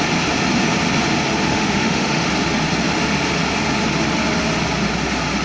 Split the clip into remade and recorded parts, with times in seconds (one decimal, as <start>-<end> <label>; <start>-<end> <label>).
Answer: 0.0-1.5 recorded; 1.5-2.3 remade; 2.3-5.4 recorded